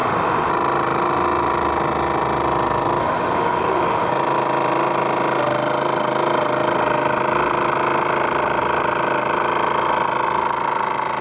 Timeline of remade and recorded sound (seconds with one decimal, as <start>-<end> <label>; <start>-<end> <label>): 0.0-0.5 remade; 0.5-3.0 recorded; 3.0-4.1 remade; 4.1-11.2 recorded